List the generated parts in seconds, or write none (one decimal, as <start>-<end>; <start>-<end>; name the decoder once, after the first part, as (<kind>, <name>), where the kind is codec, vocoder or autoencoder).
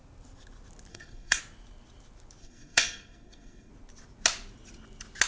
0.9-1.4 (codec, SNAC); 2.4-3.7